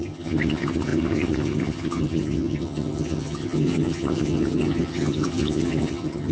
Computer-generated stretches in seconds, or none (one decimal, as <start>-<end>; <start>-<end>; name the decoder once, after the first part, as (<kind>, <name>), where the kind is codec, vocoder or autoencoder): 0.0-6.3 (vocoder, HiFi-GAN)